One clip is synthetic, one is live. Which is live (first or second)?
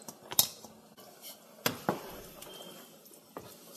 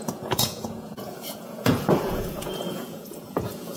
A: first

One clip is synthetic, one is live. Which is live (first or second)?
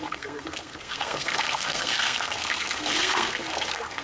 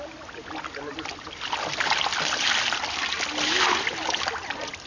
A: second